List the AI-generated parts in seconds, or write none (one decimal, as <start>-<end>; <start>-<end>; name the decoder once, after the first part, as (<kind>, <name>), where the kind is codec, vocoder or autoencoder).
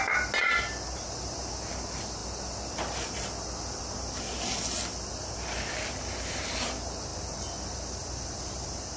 none